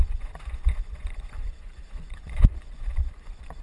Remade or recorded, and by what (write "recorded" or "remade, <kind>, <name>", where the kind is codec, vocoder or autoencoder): remade, vocoder, Vocos